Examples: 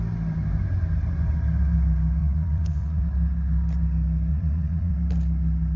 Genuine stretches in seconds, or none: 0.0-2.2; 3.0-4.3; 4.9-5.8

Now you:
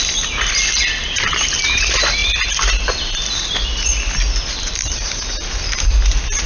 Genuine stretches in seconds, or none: 0.0-6.5

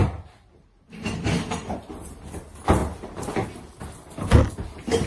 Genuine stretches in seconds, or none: 0.0-5.1